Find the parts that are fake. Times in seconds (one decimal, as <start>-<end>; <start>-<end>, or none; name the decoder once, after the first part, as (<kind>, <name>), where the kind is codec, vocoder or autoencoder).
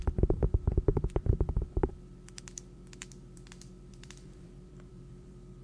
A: 0.0-5.6 (vocoder, BigVGAN v2)